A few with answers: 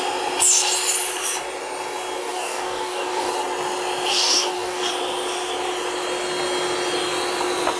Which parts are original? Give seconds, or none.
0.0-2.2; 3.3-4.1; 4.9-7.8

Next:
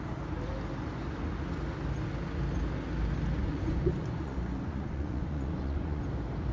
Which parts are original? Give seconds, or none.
0.0-3.4; 6.0-6.5

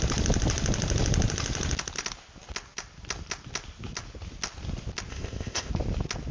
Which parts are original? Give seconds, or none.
0.0-5.1; 5.7-6.3

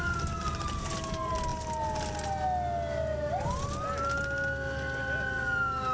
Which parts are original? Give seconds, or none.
0.0-5.9

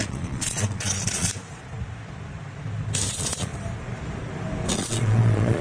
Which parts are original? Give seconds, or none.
1.3-3.1; 3.5-4.7

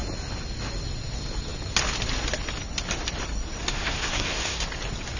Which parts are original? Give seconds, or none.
0.0-3.7; 4.6-5.2

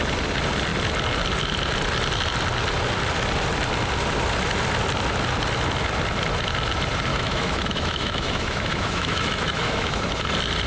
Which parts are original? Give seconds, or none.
0.0-7.1; 10.0-10.7

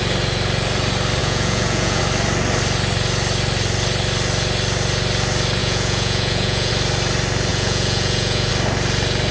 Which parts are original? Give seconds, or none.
0.0-1.2; 2.0-5.6; 6.7-7.5; 8.5-9.3